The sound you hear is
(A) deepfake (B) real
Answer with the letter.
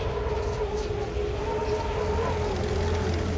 B